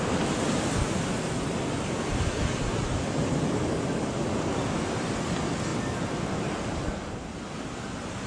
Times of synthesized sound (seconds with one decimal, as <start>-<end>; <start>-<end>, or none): none